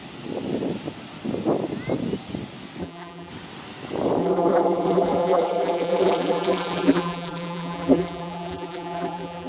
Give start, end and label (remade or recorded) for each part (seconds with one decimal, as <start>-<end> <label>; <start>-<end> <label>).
0.0-2.8 recorded; 2.8-3.3 remade; 3.3-4.2 recorded; 4.2-9.5 remade